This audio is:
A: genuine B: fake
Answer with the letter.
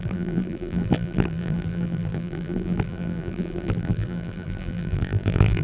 B